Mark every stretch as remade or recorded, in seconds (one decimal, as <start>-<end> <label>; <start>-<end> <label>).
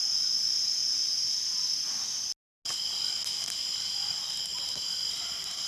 0.0-5.7 recorded